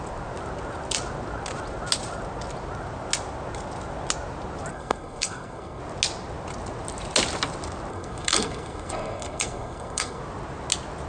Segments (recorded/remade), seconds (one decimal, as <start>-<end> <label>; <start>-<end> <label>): 0.0-4.7 recorded; 4.7-5.8 remade; 5.8-7.9 recorded; 7.9-10.2 remade; 10.2-11.1 recorded

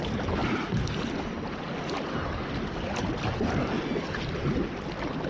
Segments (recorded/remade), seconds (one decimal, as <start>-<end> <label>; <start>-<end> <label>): 0.0-5.3 recorded

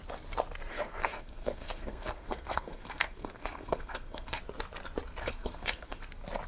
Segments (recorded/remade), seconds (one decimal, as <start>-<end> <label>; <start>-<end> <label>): 0.0-0.7 recorded; 0.7-4.4 remade; 4.4-5.2 recorded; 5.2-6.0 remade; 6.0-6.5 recorded

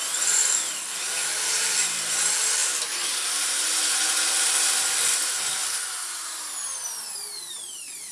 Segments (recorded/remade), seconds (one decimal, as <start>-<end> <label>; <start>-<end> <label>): 0.0-2.6 remade; 2.6-7.5 recorded; 7.5-8.1 remade

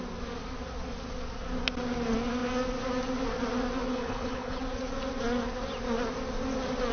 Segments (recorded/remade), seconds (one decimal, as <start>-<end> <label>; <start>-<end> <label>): 0.0-3.9 recorded; 3.9-4.6 remade; 4.6-6.9 recorded